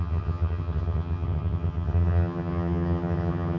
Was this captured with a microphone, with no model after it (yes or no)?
no